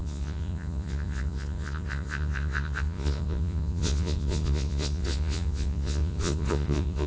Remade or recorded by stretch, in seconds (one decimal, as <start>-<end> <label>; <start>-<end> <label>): 0.0-7.1 remade